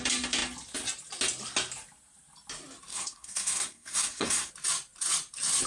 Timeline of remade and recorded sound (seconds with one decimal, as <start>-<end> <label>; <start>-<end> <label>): 0.0-2.9 recorded; 2.9-4.5 remade; 4.5-5.7 recorded